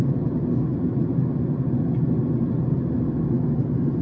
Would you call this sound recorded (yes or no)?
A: yes